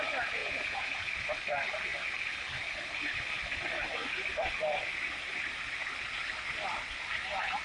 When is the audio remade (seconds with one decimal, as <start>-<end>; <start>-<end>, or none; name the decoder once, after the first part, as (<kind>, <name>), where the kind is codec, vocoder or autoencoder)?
0.4-1.0 (vocoder, Vocos)

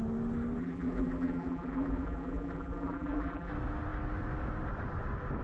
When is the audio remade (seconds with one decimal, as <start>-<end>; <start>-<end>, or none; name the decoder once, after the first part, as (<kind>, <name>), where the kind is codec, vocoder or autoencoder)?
0.6-3.5 (vocoder, BigVGAN v2)

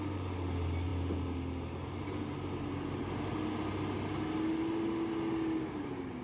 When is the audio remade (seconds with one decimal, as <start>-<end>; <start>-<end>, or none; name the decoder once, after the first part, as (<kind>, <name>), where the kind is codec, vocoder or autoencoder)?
none

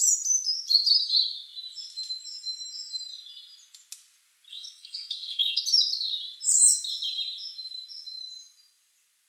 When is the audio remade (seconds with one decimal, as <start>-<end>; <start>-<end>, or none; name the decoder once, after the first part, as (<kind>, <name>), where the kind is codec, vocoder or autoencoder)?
4.5-5.6 (codec, SNAC)

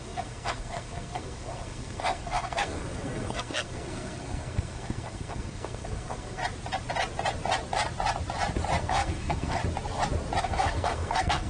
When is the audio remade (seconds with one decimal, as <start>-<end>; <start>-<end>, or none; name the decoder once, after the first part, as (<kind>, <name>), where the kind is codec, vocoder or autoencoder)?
0.0-6.4 (codec, SNAC); 8.8-9.6; 10.4-11.5

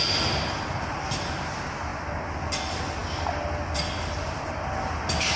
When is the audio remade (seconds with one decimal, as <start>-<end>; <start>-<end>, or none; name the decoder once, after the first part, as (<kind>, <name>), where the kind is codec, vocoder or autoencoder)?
none

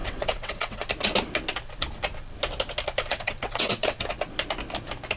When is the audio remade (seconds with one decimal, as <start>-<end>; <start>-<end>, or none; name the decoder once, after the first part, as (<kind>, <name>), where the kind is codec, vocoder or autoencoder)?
0.0-0.9 (vocoder, WaveNeXt); 3.1-4.0